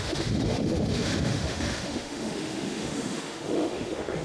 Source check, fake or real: fake